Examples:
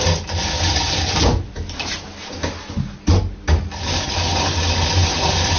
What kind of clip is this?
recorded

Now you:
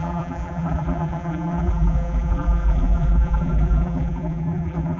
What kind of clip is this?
remade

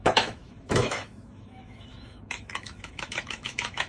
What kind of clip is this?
remade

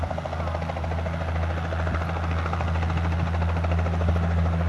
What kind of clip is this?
recorded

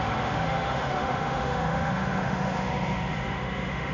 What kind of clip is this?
remade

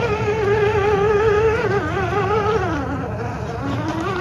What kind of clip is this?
recorded